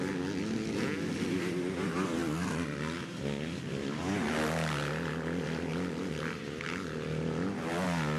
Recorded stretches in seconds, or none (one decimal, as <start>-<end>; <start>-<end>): 0.0-8.2